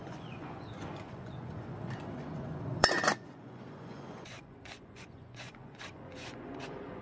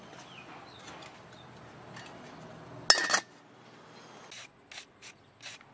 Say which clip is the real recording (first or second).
second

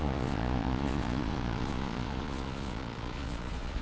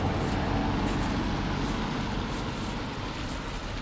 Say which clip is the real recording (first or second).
second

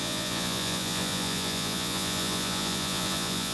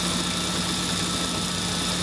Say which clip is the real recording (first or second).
second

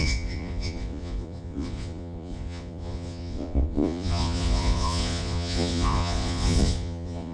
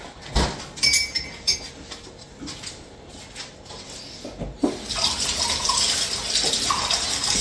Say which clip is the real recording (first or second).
second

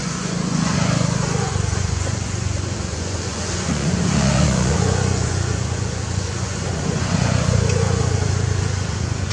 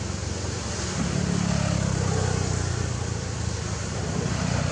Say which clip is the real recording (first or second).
second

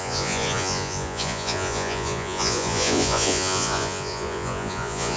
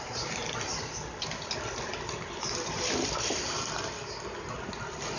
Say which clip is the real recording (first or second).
second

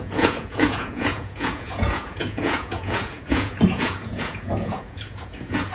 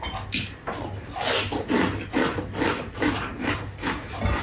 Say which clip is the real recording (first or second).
second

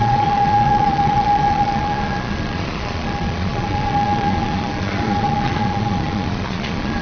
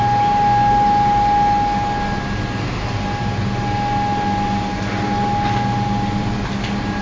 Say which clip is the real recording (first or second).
second